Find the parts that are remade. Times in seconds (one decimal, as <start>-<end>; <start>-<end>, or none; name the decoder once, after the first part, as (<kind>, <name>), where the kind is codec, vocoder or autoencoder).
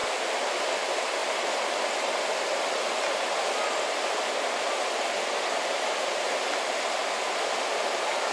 none